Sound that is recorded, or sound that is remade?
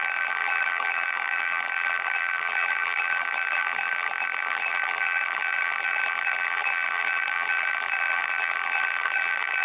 remade